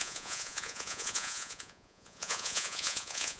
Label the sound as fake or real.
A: fake